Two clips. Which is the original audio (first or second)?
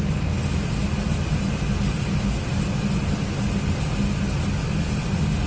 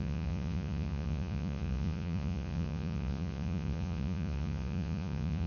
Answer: first